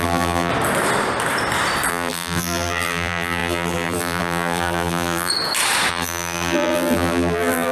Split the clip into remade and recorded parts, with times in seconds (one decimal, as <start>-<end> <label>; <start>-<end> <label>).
0.0-0.5 remade; 0.5-1.9 recorded; 1.9-5.3 remade; 5.3-5.9 recorded; 5.9-7.7 remade